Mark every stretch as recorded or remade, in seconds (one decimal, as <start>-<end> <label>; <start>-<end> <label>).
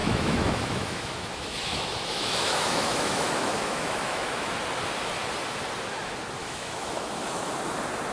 0.0-4.6 remade; 4.6-6.4 recorded; 6.4-7.5 remade; 7.5-8.1 recorded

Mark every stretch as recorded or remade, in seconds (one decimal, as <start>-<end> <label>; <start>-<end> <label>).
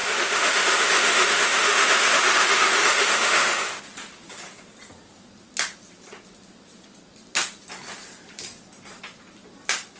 0.0-3.8 remade; 3.8-10.0 recorded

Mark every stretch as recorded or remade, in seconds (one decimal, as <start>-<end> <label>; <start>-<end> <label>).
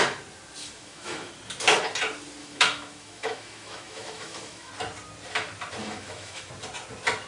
0.0-0.6 recorded; 0.6-1.3 remade; 1.3-2.4 recorded; 2.4-4.7 remade; 4.7-5.8 recorded; 5.8-6.5 remade; 6.5-7.3 recorded